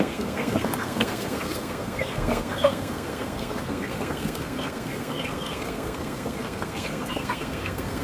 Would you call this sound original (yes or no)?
no